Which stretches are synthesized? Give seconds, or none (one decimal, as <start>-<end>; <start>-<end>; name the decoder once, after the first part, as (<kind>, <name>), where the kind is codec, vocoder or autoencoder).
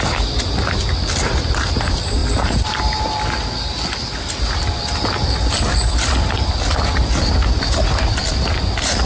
0.0-9.1 (vocoder, BigVGAN v2)